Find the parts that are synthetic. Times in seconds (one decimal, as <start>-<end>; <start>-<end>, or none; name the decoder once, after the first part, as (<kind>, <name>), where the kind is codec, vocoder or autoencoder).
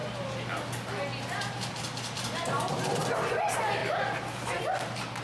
none